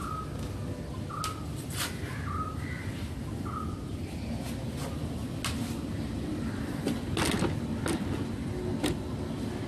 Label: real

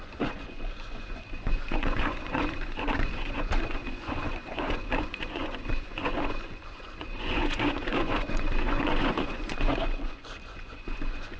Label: fake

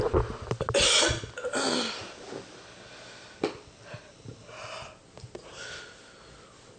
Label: real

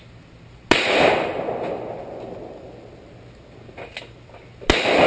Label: real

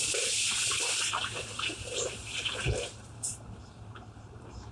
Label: fake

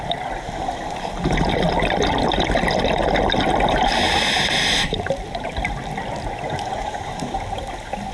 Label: real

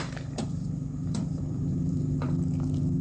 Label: fake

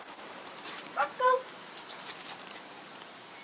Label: fake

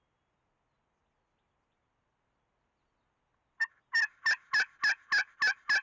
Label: real